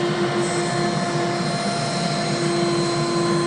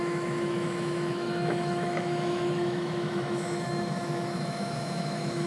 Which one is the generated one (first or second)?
second